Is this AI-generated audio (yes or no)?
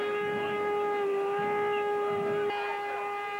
no